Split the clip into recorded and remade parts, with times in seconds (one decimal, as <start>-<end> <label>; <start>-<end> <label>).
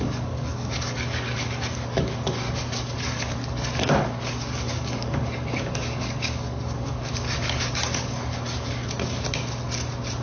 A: 0.0-8.8 remade; 8.8-10.2 recorded